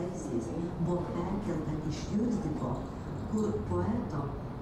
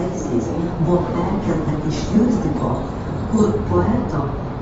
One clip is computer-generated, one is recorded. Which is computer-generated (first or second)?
second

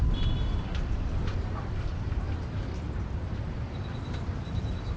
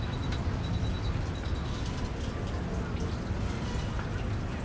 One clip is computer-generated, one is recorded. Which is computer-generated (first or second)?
first